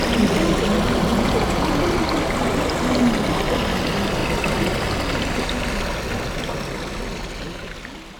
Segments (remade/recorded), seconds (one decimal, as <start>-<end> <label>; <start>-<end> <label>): 0.0-1.1 recorded; 1.1-1.7 remade; 1.7-8.2 recorded